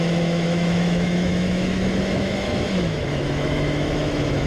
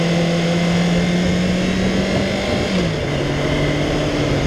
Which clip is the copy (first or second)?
first